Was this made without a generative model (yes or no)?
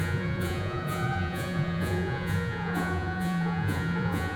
no